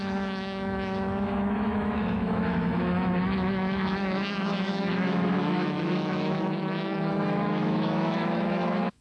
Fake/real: fake